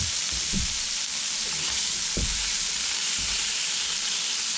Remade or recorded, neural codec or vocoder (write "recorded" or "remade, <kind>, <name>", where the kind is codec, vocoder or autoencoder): recorded